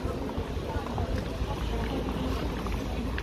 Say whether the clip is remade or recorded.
recorded